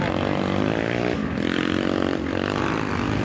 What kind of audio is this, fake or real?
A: real